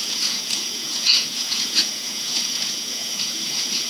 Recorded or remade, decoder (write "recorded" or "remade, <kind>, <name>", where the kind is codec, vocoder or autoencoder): remade, vocoder, Vocos